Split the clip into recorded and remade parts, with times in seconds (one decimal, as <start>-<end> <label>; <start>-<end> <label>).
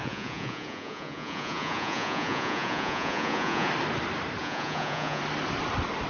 0.0-3.7 remade; 3.7-4.4 recorded; 4.4-5.2 remade; 5.2-6.1 recorded